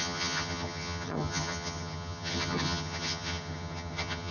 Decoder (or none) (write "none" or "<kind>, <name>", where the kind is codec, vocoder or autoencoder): vocoder, HiFi-GAN